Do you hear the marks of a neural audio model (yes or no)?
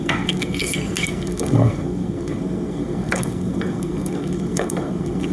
yes